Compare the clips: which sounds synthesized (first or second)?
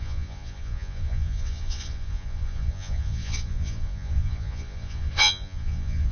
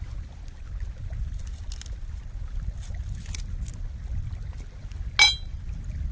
first